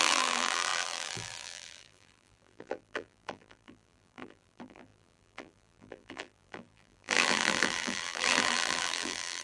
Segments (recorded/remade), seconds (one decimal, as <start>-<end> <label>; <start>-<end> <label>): 0.0-9.4 remade